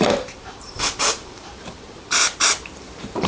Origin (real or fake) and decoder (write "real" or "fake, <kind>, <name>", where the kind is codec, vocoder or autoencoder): fake, vocoder, BigVGAN v2